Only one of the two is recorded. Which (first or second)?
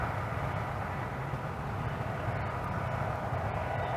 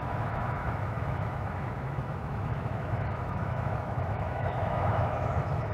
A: first